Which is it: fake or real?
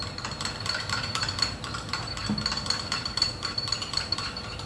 fake